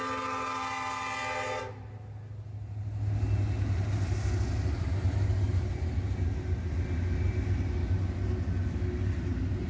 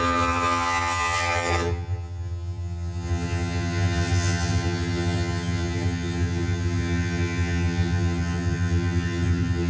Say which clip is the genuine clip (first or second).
first